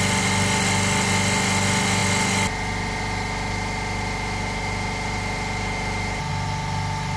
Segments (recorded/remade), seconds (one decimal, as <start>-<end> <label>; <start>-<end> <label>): 0.0-7.2 recorded